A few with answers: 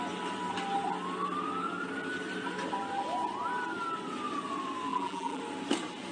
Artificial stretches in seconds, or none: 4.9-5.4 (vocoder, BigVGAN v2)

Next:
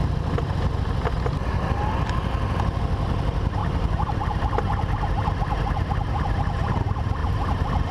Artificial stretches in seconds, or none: 3.6-4.2 (vocoder, BigVGAN v2); 7.2-7.9

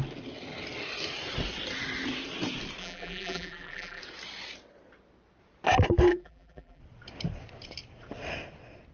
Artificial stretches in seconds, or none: 2.8-4.0 (vocoder, BigVGAN v2); 6.1-6.8

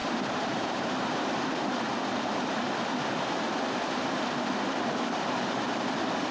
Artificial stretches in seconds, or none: 0.0-1.7 (vocoder, BigVGAN v2)

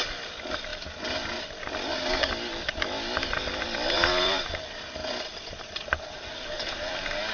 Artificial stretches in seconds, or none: 0.0-0.7 (vocoder, BigVGAN v2); 3.9-7.3